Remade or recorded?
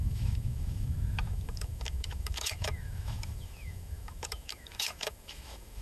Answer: remade